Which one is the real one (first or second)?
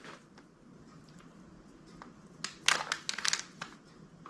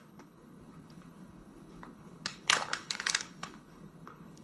first